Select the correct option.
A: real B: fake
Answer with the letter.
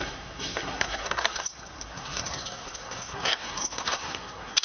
B